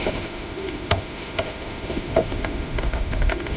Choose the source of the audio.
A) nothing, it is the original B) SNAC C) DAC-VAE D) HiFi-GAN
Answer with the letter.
C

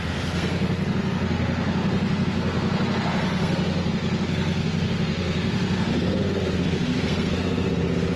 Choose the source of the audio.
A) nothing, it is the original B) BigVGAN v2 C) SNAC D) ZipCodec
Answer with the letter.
C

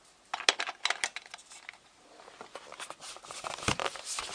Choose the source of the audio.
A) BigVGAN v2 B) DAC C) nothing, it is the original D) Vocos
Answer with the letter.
C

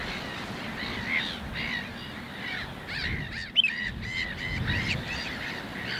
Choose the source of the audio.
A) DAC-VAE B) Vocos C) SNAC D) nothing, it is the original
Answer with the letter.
D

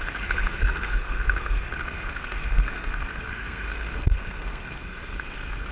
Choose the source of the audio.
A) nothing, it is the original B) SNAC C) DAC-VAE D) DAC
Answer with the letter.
B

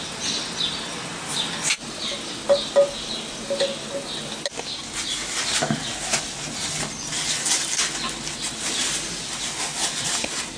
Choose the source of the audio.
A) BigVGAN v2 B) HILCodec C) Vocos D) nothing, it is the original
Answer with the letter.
D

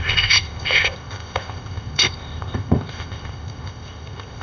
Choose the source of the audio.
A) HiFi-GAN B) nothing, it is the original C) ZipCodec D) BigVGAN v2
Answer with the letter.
C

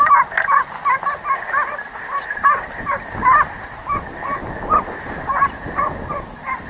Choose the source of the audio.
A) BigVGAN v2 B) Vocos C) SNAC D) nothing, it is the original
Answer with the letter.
D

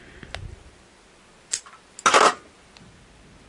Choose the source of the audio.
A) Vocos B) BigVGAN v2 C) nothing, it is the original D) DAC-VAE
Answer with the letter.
C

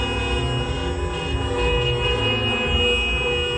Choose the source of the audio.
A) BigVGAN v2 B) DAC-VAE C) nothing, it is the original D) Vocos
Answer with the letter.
C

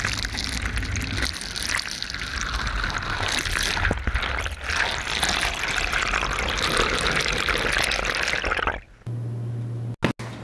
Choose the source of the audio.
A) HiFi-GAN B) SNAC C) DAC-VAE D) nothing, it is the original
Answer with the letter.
D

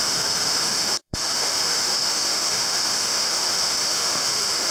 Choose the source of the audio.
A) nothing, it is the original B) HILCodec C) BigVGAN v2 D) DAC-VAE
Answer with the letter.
D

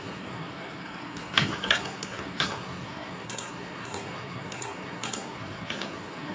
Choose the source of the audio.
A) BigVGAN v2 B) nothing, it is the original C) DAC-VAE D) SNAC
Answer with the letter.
D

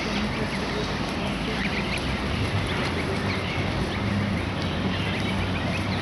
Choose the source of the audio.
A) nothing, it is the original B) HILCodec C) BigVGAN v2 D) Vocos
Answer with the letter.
C